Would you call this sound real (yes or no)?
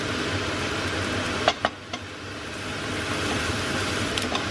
yes